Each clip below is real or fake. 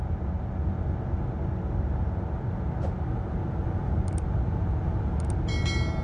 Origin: real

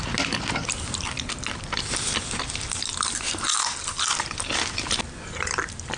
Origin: real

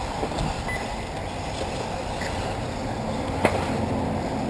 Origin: real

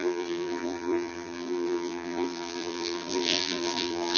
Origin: fake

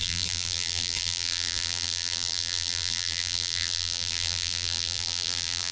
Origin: fake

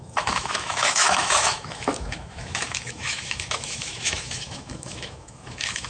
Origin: fake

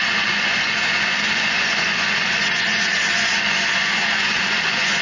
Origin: fake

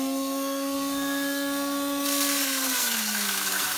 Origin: fake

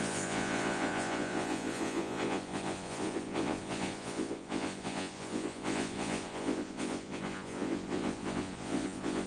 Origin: fake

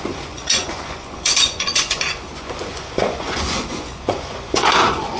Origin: fake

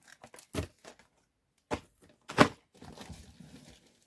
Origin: real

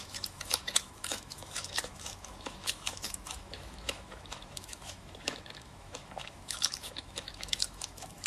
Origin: fake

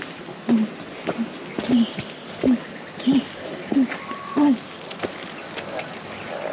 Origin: real